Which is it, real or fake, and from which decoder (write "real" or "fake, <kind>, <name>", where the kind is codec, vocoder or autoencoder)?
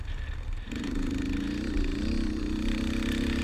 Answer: real